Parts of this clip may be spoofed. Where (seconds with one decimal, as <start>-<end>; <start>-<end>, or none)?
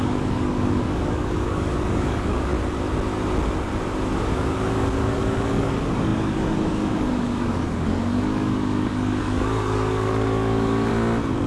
0.0-2.5; 4.2-10.9